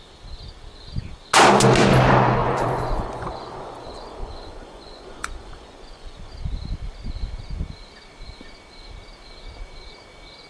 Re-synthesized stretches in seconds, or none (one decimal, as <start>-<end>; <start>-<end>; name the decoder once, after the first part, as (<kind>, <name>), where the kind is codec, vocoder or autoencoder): 2.4-6.3 (vocoder, Vocos)